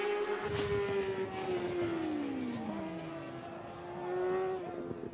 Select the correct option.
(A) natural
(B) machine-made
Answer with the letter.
A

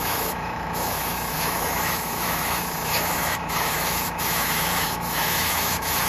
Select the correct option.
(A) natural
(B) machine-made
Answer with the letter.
B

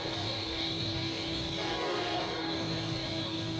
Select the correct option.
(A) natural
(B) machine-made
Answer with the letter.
B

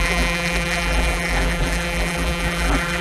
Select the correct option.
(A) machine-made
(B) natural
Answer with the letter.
A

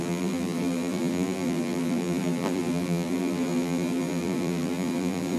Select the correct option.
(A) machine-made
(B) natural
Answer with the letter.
A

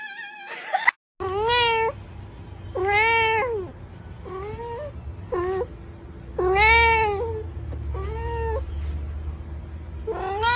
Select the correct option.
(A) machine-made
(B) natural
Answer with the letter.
B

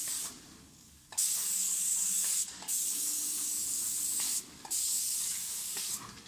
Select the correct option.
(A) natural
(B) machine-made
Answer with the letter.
B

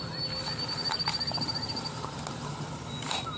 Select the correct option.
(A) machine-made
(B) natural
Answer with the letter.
B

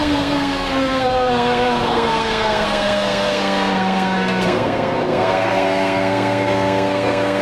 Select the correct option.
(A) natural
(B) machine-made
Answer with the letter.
B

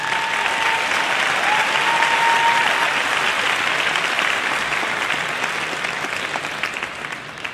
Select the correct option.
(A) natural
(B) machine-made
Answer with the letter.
A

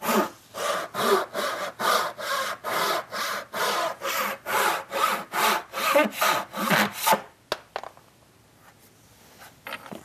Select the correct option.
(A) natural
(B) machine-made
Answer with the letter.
A